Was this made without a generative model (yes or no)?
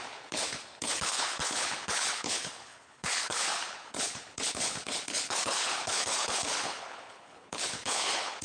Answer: no